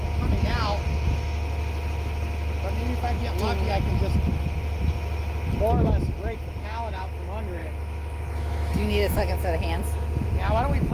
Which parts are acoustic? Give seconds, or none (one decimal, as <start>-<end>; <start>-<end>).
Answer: 0.0-7.6; 9.8-10.9